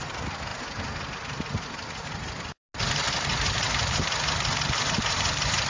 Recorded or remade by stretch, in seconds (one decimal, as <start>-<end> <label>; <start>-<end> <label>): 0.0-5.7 recorded